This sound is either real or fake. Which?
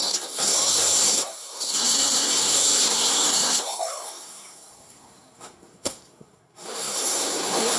fake